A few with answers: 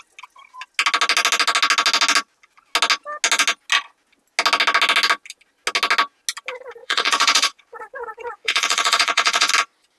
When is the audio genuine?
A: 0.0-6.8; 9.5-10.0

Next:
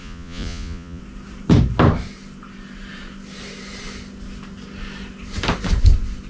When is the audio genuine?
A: 1.0-6.3

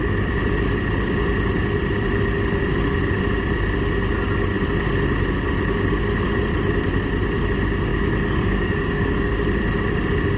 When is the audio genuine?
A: 0.0-7.9; 9.3-10.4

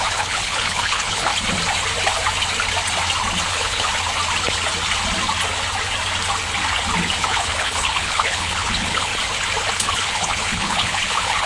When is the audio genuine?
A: 1.3-3.5; 3.9-7.2; 9.1-9.7

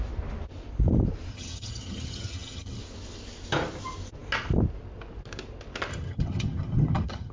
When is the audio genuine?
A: 0.0-1.3; 2.8-5.9